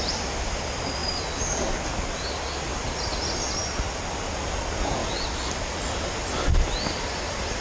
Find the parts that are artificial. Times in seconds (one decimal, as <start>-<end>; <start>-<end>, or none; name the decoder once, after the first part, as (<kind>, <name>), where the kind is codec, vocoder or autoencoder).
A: 1.0-1.5 (vocoder, BigVGAN v2); 2.7-3.3; 5.0-6.3